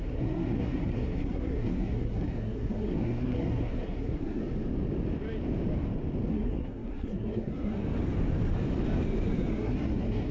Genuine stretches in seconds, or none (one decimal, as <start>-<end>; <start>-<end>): 4.4-6.3; 7.8-9.5